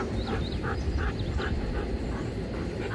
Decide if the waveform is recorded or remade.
recorded